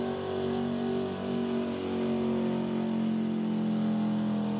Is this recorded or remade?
recorded